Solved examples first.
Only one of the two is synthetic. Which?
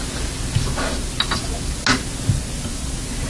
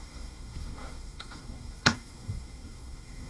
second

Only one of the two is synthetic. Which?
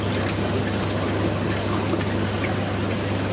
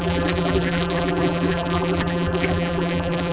second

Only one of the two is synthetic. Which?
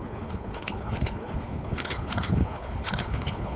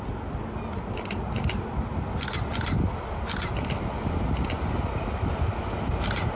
first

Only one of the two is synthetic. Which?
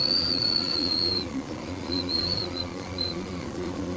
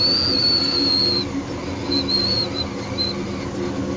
first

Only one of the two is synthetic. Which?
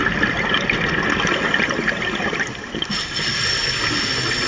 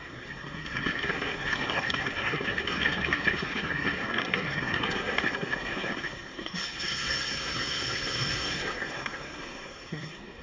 second